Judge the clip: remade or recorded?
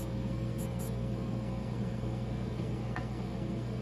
remade